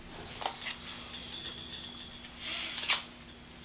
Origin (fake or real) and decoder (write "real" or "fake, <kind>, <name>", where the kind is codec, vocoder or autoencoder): real